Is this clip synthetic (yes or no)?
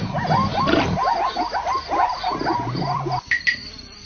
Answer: yes